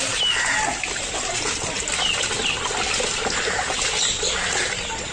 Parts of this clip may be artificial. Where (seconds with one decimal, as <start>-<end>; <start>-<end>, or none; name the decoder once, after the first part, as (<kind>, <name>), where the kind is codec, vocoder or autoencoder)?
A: none